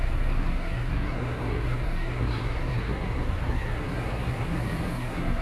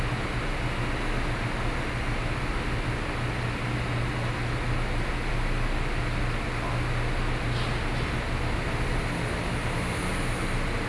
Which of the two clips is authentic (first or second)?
second